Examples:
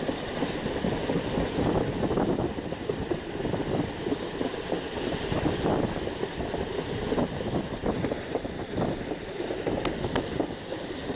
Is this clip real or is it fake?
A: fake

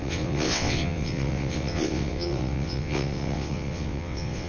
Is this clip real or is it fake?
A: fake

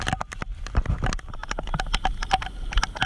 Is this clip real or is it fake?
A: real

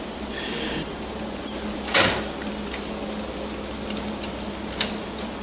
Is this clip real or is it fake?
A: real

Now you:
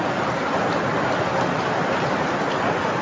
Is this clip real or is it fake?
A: real